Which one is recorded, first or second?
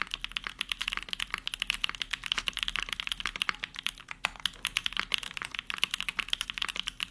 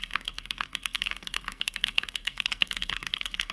first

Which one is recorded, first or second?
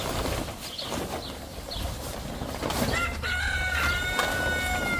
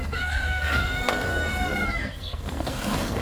first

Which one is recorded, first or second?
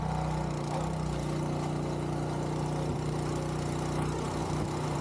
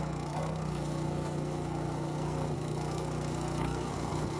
first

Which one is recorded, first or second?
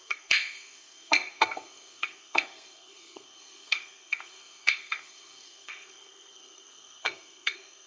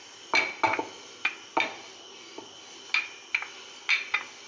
second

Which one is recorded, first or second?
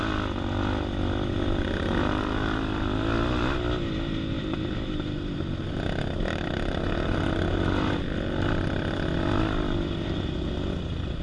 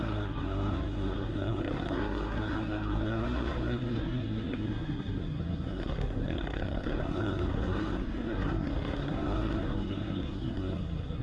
first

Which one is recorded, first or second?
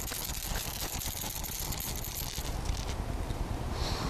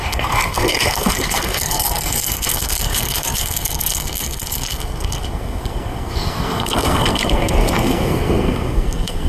first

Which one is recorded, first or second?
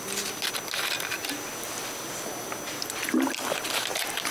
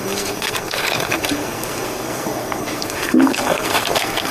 first